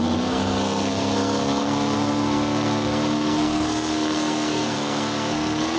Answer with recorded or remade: remade